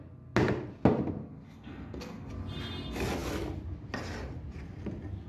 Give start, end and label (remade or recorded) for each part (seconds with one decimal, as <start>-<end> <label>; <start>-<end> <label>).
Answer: 0.0-1.2 recorded; 1.2-2.3 remade; 2.3-5.3 recorded